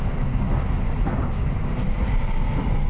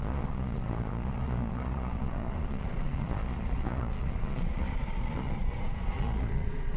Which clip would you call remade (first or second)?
second